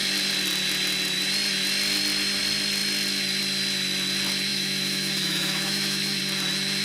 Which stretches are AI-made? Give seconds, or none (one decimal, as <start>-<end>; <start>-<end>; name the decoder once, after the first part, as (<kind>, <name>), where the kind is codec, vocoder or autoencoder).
4.5-6.2 (autoencoder, DAC-VAE)